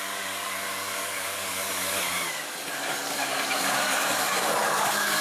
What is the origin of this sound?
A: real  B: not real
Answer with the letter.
B